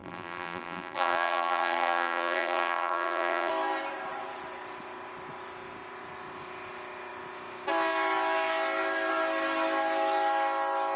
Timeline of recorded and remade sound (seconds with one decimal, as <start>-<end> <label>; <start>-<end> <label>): 0.0-3.5 remade; 3.5-11.0 recorded